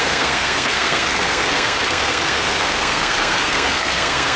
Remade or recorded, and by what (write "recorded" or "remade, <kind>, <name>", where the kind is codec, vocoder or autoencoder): remade, codec, SNAC